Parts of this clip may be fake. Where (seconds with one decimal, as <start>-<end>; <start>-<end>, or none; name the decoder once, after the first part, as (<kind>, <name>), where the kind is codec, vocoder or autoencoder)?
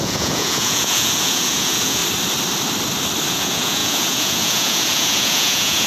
0.0-2.0 (vocoder, Vocos); 3.3-5.9